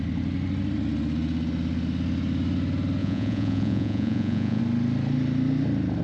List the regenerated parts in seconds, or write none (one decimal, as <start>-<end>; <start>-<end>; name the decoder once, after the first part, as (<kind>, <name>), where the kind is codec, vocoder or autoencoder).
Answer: 3.0-4.6 (vocoder, Vocos)